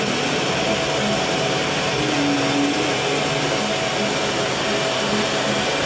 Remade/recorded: recorded